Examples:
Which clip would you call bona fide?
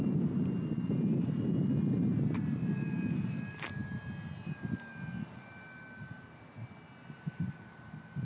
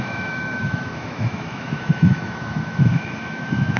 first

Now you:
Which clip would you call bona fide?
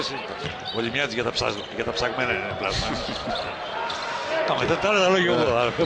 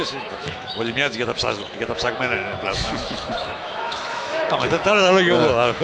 first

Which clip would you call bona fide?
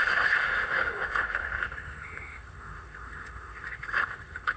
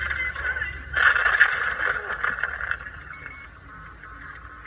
second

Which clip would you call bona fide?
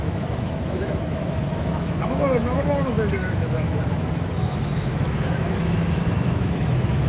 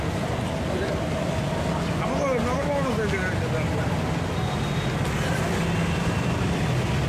second